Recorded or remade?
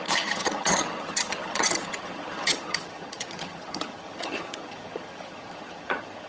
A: remade